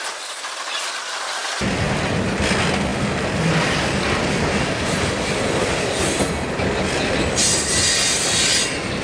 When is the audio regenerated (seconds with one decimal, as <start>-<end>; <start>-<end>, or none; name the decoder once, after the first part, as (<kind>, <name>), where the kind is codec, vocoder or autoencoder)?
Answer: none